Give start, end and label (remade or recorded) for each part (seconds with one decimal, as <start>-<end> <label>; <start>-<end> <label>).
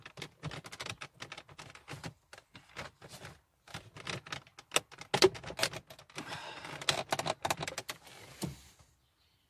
0.0-9.5 recorded